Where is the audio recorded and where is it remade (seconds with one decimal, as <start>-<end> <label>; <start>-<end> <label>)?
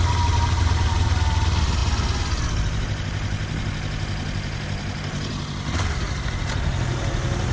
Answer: 0.0-7.5 recorded